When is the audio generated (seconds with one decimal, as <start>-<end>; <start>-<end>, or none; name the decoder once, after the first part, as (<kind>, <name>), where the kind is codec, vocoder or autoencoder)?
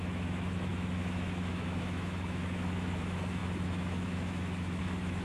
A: 0.0-5.2 (autoencoder, DAC-VAE)